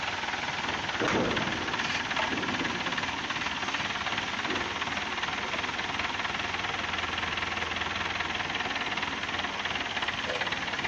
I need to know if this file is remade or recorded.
recorded